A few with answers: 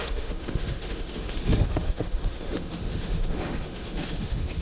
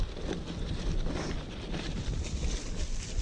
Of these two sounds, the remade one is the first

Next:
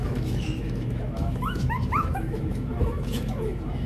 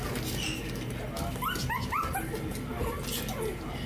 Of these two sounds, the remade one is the first